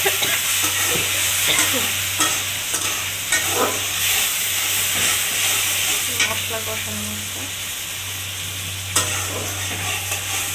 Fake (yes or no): no